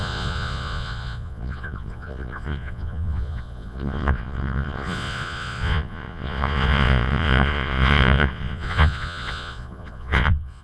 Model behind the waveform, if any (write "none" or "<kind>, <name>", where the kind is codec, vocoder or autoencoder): vocoder, Vocos